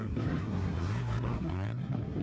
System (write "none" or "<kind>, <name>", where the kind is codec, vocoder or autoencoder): codec, SNAC